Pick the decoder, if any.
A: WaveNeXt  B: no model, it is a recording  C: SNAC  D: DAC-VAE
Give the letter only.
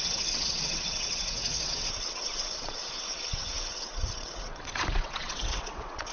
A